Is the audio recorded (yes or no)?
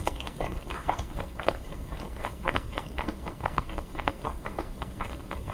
no